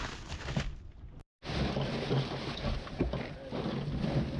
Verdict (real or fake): real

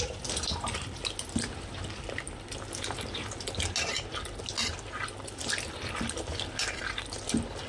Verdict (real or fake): real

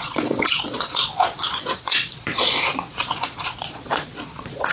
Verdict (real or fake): fake